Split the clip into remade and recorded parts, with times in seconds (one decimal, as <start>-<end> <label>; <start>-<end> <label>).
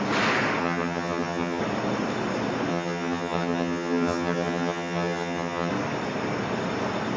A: 0.0-0.6 recorded; 0.6-1.6 remade; 1.6-2.7 recorded; 2.7-5.7 remade; 5.7-7.2 recorded